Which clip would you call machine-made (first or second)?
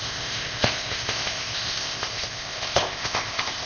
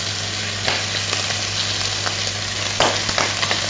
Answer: first